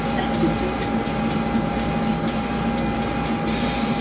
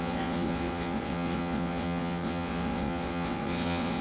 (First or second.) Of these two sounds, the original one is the first